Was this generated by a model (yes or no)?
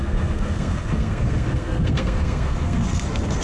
yes